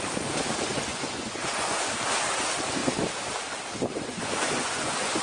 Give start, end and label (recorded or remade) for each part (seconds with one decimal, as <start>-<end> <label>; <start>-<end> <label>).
0.0-0.9 recorded; 0.9-1.9 remade; 1.9-4.1 recorded; 4.1-5.2 remade